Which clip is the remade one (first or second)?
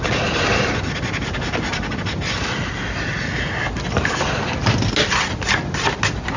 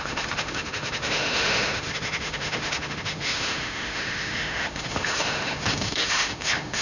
second